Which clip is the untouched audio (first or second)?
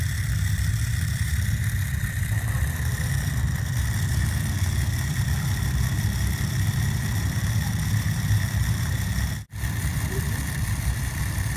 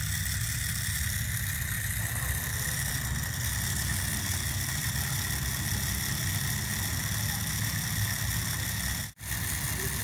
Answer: second